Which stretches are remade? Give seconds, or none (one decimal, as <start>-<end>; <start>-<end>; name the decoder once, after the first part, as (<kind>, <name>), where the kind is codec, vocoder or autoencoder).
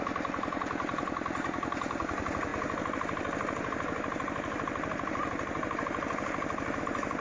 none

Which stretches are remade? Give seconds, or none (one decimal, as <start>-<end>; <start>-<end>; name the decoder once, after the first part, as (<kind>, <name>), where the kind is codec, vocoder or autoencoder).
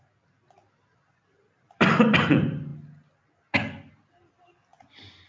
0.0-2.7 (vocoder, BigVGAN v2); 4.1-5.3